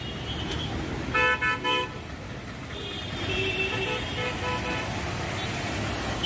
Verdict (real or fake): real